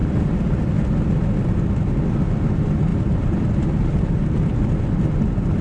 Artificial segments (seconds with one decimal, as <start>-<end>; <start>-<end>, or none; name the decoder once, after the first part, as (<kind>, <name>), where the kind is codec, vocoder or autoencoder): 2.9-4.4 (vocoder, BigVGAN v2)